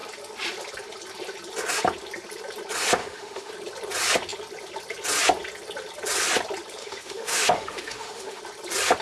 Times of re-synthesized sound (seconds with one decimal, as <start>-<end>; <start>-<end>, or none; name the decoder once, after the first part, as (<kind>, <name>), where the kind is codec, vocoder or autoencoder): 3.0-3.5 (autoencoder, DAC-VAE); 6.8-8.4